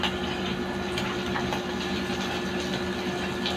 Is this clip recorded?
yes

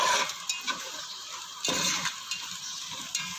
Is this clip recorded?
no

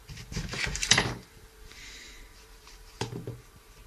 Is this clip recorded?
no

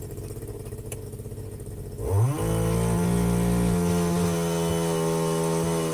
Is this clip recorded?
yes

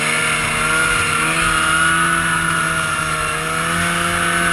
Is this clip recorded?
yes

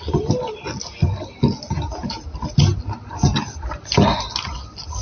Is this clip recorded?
yes